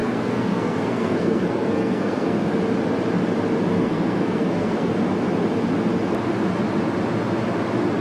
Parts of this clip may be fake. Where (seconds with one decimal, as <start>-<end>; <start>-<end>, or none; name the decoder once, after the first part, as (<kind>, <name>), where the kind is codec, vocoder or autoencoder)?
0.0-2.5 (codec, SNAC); 3.7-4.9